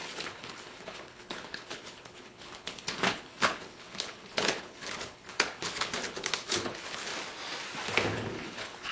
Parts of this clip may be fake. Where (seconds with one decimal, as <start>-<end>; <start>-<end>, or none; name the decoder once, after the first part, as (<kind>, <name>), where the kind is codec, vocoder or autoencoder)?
0.0-7.1 (codec, HILCodec); 8.1-8.9